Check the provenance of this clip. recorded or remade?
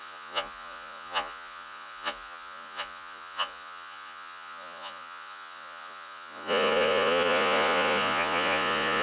remade